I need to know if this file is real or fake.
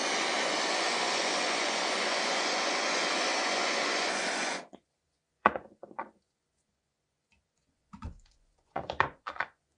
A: fake